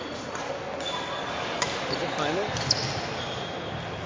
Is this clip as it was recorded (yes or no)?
yes